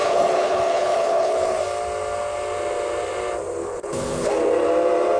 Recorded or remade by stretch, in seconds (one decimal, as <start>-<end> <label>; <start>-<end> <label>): 0.0-1.6 remade; 1.6-3.6 recorded; 3.6-4.3 remade; 4.3-5.2 recorded